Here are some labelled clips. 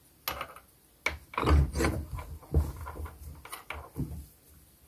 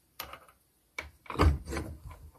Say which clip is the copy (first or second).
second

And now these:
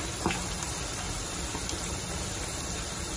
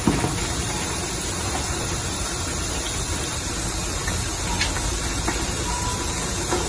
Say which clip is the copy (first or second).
first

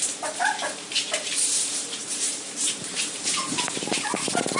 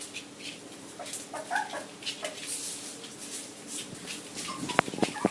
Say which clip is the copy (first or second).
first